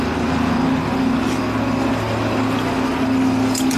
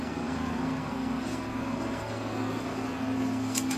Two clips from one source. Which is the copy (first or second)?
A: second